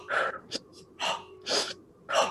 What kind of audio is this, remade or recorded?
remade